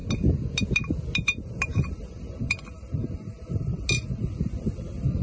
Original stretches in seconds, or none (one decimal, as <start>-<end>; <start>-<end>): 0.0-5.2